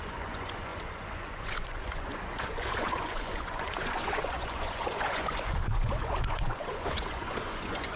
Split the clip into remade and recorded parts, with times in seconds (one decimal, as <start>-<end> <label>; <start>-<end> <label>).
0.0-8.0 remade